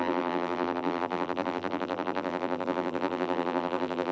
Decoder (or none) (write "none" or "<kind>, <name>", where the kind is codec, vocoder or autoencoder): vocoder, BigVGAN v2